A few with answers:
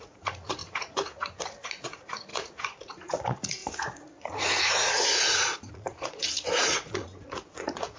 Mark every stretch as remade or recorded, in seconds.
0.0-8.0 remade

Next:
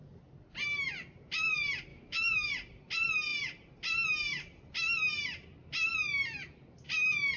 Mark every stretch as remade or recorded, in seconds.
0.0-1.9 recorded; 1.9-2.5 remade; 2.5-7.4 recorded

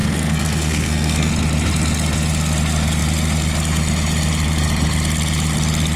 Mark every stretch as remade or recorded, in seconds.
0.0-1.3 remade; 1.3-6.0 recorded

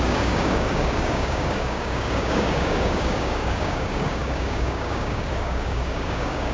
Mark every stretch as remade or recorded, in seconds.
0.0-6.5 remade

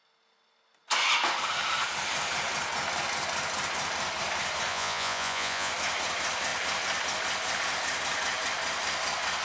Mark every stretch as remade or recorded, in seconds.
0.0-4.7 recorded; 4.7-5.7 remade; 5.7-9.4 recorded

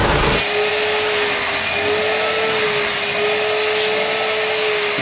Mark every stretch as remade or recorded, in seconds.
0.0-5.0 recorded

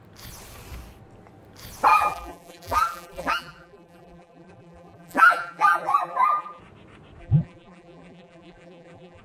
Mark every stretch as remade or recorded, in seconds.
0.0-1.9 recorded; 1.9-6.6 remade; 6.6-7.2 recorded; 7.2-9.2 remade